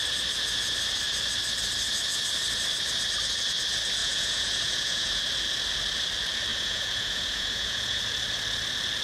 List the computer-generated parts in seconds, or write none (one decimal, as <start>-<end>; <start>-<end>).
4.0-5.2; 6.5-8.0